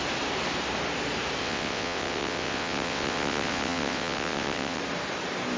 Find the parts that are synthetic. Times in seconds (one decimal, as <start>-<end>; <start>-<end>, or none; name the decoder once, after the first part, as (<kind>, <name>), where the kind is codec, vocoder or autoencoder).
1.4-4.8 (vocoder, WaveNeXt)